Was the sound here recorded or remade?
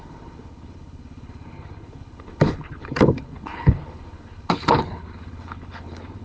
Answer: remade